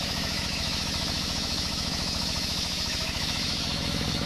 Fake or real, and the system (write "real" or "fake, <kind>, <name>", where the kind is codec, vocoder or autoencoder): fake, autoencoder, DAC-VAE